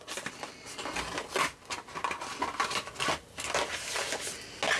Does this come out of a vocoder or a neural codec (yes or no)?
no